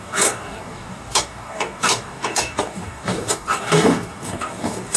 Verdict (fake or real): fake